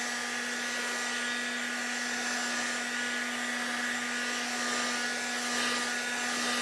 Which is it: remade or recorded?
recorded